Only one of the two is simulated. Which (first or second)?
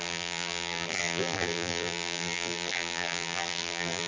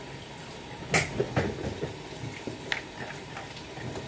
first